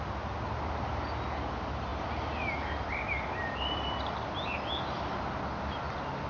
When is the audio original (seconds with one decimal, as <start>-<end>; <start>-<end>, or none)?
0.0-6.3